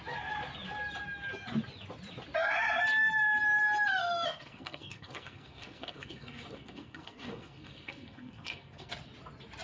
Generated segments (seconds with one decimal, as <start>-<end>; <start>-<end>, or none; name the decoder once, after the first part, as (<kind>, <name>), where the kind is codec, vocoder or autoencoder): 4.0-8.9 (codec, SNAC)